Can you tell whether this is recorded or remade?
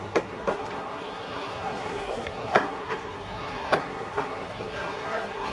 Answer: remade